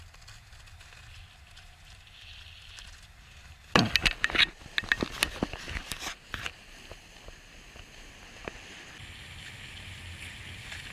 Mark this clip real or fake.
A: real